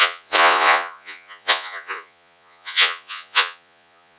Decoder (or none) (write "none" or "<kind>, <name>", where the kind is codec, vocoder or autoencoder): vocoder, Vocos